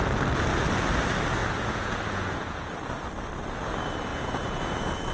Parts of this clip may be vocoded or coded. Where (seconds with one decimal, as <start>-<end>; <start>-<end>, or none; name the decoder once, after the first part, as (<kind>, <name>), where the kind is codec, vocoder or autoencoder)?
1.4-2.7 (vocoder, Vocos); 4.1-5.1